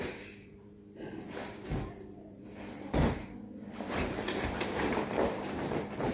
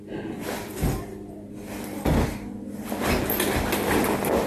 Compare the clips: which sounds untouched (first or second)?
second